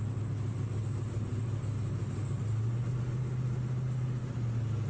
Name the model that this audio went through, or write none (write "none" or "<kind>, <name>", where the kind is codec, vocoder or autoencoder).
none